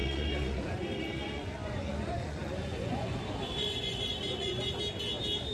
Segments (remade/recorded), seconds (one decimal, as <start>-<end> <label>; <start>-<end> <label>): 0.0-3.2 remade; 3.2-3.6 recorded; 3.6-4.8 remade; 4.8-5.5 recorded